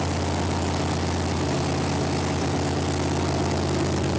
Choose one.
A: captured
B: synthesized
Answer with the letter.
A